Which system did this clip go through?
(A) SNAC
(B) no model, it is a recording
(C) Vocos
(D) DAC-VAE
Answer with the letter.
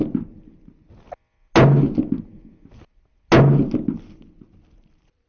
B